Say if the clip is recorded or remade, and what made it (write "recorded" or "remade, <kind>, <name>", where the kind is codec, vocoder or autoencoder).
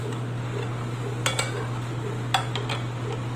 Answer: recorded